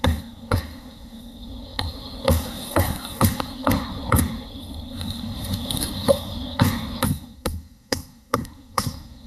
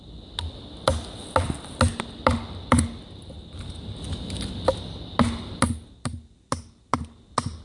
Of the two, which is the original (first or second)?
second